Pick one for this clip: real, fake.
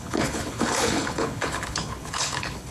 fake